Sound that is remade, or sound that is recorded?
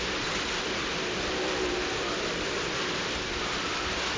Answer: recorded